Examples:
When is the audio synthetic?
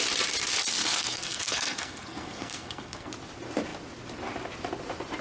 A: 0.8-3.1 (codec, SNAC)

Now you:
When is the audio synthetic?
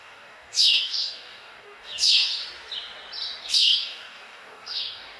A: 0.0-2.4 (codec, DAC); 3.4-5.2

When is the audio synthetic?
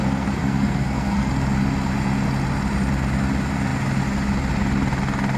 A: 0.0-1.3 (codec, SNAC)